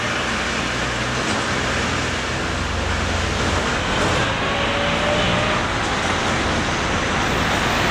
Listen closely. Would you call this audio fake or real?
real